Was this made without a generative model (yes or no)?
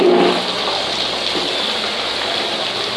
yes